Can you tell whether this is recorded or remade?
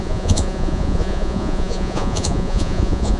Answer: remade